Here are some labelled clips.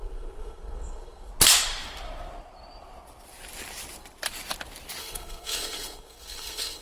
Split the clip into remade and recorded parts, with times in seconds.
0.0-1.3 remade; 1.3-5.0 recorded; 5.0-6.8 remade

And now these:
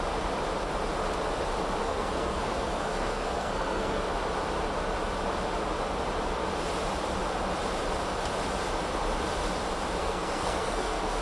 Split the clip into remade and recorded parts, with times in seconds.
0.0-1.8 recorded; 1.8-4.0 remade; 4.0-10.0 recorded; 10.0-11.2 remade

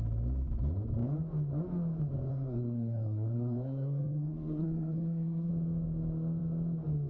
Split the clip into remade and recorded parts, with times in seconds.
0.0-2.3 recorded; 2.3-5.5 remade; 5.5-7.1 recorded